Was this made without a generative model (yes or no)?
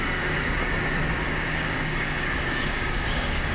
no